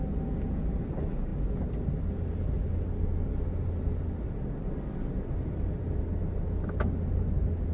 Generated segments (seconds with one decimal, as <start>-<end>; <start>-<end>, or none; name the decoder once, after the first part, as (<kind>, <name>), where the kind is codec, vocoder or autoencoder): none